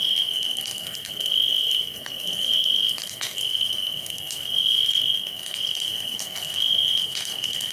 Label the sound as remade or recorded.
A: remade